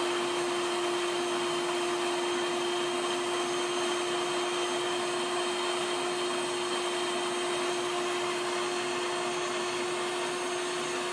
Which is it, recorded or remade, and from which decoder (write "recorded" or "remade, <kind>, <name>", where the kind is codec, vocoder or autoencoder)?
recorded